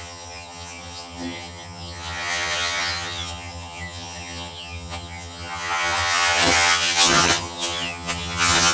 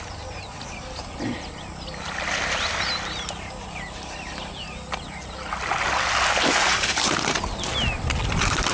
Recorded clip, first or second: second